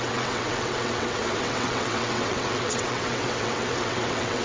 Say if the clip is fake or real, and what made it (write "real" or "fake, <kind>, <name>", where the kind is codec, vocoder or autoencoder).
fake, vocoder, WaveNeXt